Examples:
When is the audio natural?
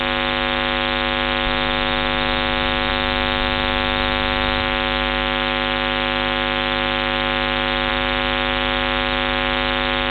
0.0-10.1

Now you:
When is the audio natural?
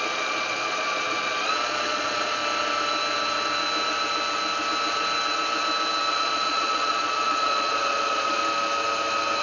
2.4-6.1; 8.4-9.4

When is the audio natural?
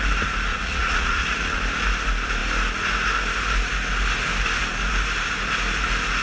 0.0-0.5; 1.6-6.2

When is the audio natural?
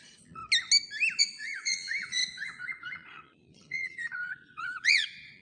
0.4-1.2